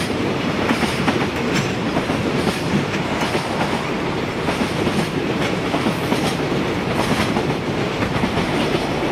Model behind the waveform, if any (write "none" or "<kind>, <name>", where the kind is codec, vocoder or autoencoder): vocoder, BigVGAN v2